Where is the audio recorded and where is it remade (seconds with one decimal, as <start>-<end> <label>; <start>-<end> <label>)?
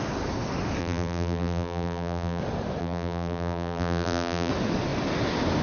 0.0-0.8 recorded; 0.8-2.4 remade; 2.4-2.8 recorded; 2.8-4.5 remade; 4.5-5.6 recorded